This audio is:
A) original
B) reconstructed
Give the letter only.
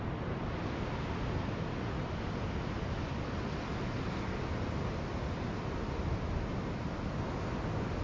A